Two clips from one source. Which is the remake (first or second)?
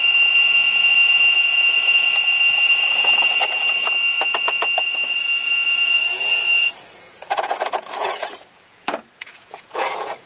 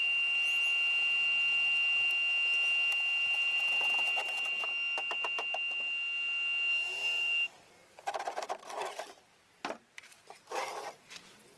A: first